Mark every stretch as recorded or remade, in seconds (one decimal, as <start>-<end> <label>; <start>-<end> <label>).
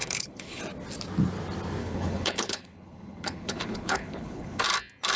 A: 0.0-0.6 remade; 0.6-1.8 recorded; 1.8-4.6 remade; 4.6-5.2 recorded